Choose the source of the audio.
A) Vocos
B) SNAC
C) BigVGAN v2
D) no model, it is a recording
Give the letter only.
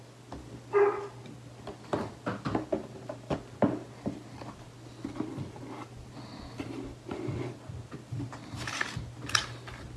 D